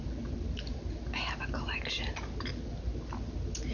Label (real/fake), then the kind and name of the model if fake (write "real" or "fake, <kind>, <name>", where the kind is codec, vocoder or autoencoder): real